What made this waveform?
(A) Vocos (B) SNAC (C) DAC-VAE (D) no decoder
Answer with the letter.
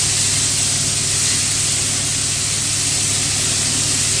D